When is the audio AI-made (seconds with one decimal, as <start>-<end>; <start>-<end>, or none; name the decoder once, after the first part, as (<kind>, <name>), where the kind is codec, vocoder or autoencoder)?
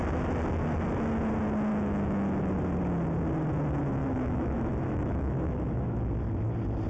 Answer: 1.7-2.5 (autoencoder, DAC-VAE); 4.0-6.1